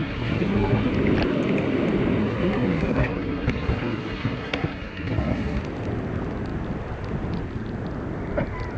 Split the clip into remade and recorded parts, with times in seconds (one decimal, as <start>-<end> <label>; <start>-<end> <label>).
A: 0.0-0.9 remade; 0.9-2.2 recorded; 2.2-5.6 remade; 5.6-8.8 recorded